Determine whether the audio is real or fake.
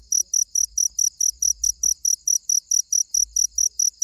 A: real